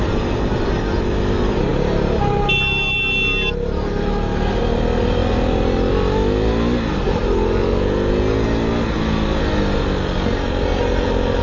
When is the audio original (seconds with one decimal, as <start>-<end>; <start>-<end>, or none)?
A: 0.0-11.4